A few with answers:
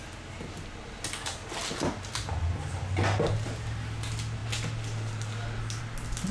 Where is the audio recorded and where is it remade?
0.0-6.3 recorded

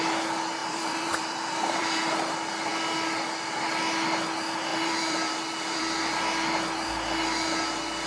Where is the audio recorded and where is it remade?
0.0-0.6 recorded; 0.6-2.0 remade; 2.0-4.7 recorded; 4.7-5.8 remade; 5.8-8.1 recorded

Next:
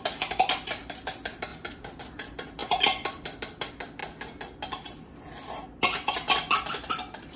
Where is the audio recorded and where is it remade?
0.0-2.6 recorded; 2.6-3.4 remade; 3.4-7.4 recorded

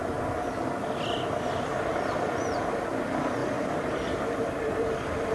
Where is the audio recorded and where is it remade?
0.0-3.4 recorded; 3.4-5.3 remade

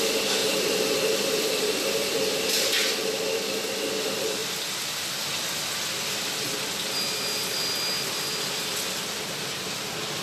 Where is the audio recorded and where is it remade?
0.0-0.4 recorded; 0.4-2.5 remade; 2.5-10.2 recorded

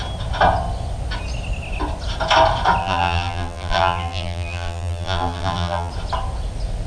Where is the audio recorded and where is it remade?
0.0-2.8 recorded; 2.8-5.9 remade; 5.9-6.9 recorded